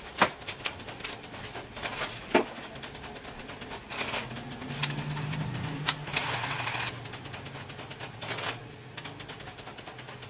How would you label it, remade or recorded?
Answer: recorded